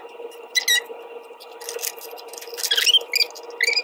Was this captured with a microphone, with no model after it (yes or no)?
yes